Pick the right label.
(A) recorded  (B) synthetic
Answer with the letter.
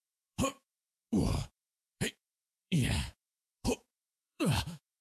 B